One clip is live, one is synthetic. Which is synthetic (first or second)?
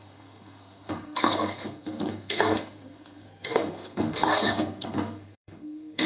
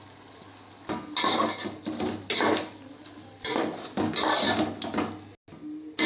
first